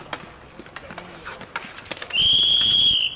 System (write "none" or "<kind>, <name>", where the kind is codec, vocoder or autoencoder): none